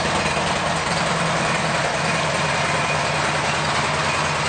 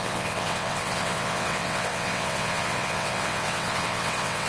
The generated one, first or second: second